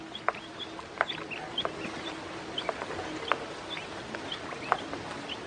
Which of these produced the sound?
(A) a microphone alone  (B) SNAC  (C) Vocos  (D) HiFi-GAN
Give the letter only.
A